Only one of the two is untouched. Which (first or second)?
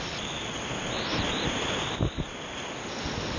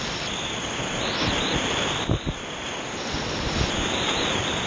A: first